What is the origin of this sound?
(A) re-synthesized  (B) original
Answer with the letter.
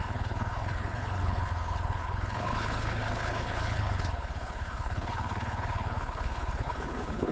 A